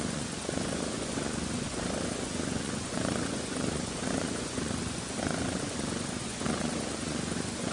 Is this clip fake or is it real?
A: fake